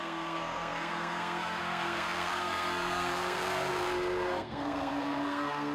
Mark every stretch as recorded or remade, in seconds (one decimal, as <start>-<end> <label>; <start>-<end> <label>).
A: 0.0-5.7 remade